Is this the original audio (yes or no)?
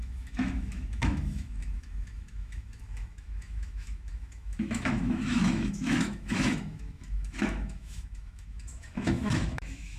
no